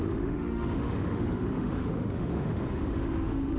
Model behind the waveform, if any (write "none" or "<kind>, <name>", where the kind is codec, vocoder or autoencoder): autoencoder, DAC-VAE